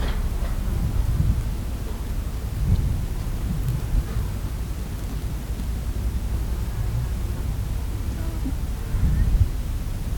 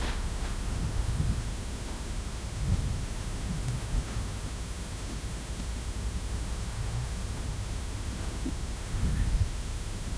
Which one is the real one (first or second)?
first